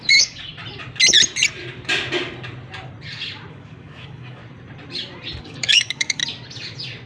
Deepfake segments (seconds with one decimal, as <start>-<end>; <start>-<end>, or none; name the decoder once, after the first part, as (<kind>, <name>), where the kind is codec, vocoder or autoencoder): 0.0-0.5 (codec, DAC); 3.5-4.4; 5.4-6.2